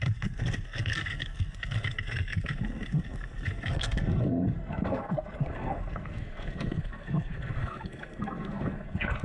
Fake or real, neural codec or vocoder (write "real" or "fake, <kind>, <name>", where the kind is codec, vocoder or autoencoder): fake, codec, SNAC